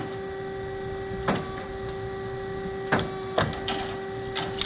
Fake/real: real